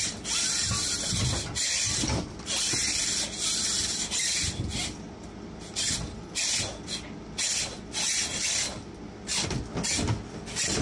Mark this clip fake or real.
real